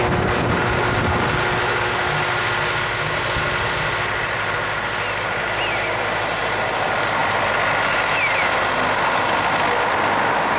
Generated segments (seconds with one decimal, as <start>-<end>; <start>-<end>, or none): none